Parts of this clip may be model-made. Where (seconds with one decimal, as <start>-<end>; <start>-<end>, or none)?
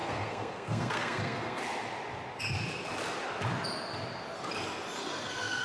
0.0-1.6; 5.0-5.6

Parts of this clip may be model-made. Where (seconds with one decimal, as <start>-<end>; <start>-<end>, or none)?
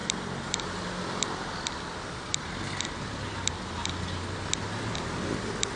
none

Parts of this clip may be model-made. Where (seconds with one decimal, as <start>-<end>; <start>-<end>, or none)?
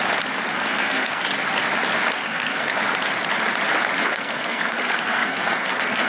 0.5-1.2; 2.2-2.8; 4.0-6.1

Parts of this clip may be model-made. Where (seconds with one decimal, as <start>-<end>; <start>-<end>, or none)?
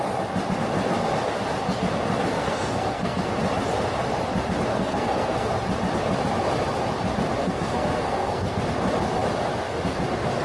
2.3-3.3; 4.7-5.5; 7.4-8.6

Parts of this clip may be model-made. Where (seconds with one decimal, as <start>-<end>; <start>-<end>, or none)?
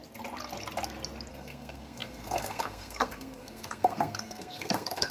1.3-5.1